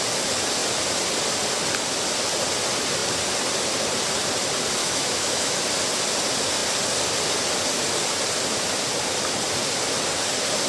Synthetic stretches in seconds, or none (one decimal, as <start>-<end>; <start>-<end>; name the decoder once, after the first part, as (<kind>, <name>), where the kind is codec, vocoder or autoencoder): 4.8-5.6 (autoencoder, DAC-VAE)